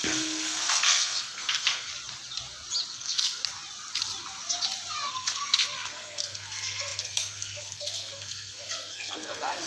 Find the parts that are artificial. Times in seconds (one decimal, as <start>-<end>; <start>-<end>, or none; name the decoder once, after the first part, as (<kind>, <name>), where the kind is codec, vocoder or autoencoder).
0.0-1.9 (codec, SNAC); 2.9-3.4; 5.1-9.7